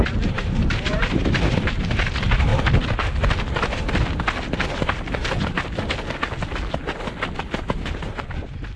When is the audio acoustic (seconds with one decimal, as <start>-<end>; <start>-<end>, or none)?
2.5-4.8; 5.2-7.6